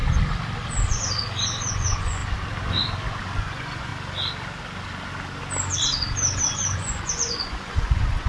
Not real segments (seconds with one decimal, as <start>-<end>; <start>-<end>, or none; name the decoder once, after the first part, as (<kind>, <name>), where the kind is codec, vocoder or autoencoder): 1.7-2.2 (vocoder, Vocos); 3.4-3.9; 6.4-8.3

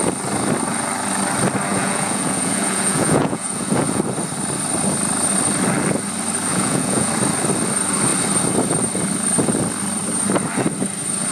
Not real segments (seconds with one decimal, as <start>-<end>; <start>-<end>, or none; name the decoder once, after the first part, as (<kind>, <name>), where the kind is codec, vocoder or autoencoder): 1.7-4.0 (vocoder, Vocos); 6.5-7.1